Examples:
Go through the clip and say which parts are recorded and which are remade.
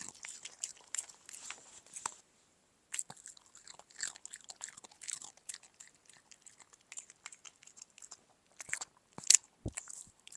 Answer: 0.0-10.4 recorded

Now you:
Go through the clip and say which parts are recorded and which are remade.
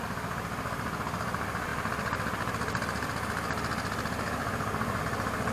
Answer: 0.0-5.5 recorded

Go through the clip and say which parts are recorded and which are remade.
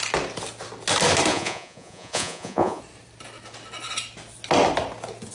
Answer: 0.0-1.3 recorded; 1.3-2.8 remade; 2.8-5.3 recorded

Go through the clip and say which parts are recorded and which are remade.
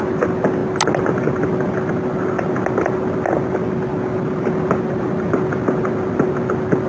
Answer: 0.0-6.9 recorded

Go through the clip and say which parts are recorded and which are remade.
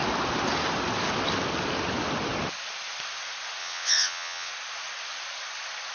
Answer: 0.0-3.6 recorded; 3.6-4.5 remade; 4.5-5.9 recorded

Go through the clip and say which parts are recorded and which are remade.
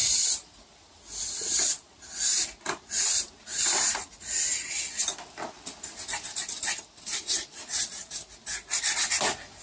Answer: 0.0-2.0 remade; 2.0-9.6 recorded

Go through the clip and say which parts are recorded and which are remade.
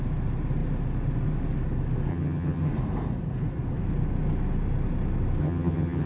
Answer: 0.0-2.1 recorded; 2.1-2.7 remade; 2.7-5.4 recorded; 5.4-6.1 remade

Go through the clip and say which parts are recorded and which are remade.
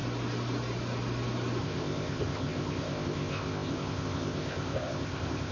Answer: 0.0-1.6 recorded; 1.6-5.5 remade